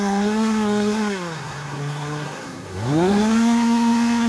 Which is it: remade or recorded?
remade